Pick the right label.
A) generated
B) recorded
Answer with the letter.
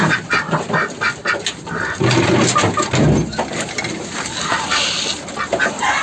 B